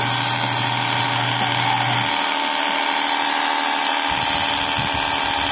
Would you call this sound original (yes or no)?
yes